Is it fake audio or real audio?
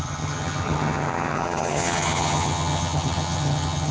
fake